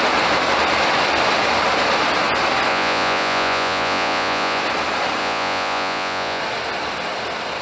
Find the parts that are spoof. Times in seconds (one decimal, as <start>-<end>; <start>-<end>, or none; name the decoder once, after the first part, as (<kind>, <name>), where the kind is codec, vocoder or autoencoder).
2.7-4.6 (vocoder, Vocos); 5.2-6.4